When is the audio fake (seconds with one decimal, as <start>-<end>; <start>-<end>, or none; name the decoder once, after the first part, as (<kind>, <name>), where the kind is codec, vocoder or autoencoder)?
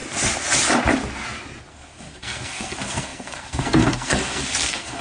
1.7-5.0 (codec, SNAC)